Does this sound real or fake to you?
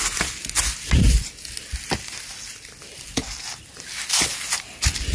real